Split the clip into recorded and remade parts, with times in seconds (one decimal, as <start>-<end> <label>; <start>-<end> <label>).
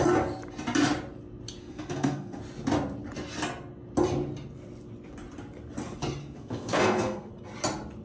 0.0-1.6 recorded; 1.6-2.4 remade; 2.4-6.2 recorded; 6.2-7.3 remade; 7.3-8.0 recorded